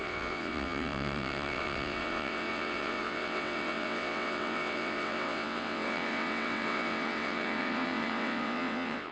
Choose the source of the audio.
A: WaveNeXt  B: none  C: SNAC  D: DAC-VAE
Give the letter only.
A